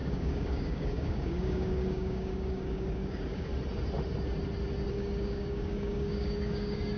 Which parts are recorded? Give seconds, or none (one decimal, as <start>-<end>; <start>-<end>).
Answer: 3.5-4.9